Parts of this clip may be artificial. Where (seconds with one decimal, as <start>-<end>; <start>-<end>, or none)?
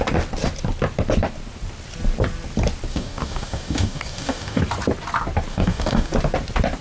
2.9-4.6; 5.5-6.1